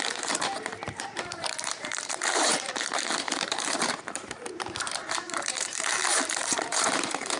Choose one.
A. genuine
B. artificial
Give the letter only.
B